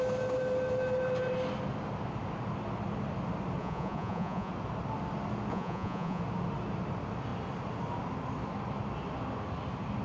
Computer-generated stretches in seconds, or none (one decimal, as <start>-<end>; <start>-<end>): 3.6-4.5; 5.5-6.2